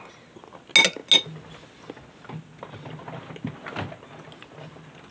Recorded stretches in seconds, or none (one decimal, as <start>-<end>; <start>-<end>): 0.0-5.1